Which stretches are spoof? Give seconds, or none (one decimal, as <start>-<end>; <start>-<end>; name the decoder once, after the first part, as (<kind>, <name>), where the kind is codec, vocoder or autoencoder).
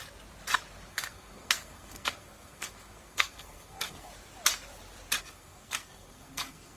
0.9-4.1 (codec, SNAC); 5.2-6.8